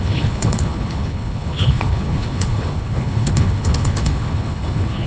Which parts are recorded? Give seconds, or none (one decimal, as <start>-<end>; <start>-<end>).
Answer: none